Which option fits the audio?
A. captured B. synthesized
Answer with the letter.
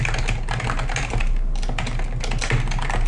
A